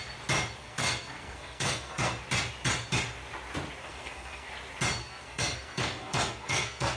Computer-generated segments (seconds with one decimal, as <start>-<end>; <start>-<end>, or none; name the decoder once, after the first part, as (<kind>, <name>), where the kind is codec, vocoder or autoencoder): 0.6-2.2 (codec, SNAC); 3.8-4.5; 5.0-7.0

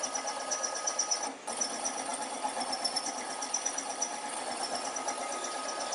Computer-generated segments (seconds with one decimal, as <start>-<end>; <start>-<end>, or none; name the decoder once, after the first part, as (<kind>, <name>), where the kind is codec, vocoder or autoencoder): 2.1-4.3 (vocoder, BigVGAN v2)

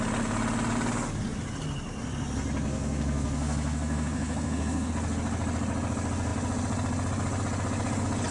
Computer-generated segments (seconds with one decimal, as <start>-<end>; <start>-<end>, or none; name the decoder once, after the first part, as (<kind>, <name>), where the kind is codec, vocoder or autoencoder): 2.7-4.9 (codec, SNAC)

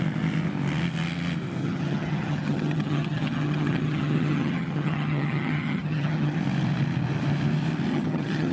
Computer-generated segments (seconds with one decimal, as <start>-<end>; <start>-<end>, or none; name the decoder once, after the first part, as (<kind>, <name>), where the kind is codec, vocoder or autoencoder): 1.6-6.4 (vocoder, HiFi-GAN); 7.9-8.5

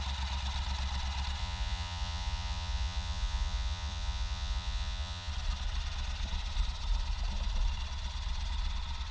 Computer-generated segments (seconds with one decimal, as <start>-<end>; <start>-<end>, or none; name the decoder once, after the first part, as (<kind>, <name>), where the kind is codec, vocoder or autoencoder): 1.4-5.3 (vocoder, Vocos)